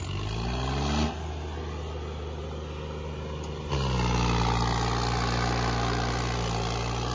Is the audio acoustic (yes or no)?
yes